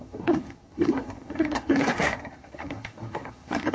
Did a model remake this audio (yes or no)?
yes